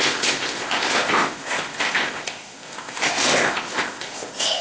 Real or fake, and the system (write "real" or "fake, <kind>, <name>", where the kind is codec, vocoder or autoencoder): fake, codec, ZipCodec